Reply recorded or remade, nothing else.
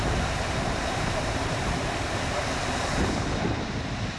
recorded